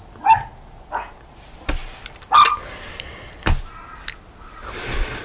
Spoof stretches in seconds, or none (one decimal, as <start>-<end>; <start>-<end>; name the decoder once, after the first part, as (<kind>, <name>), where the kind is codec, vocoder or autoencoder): none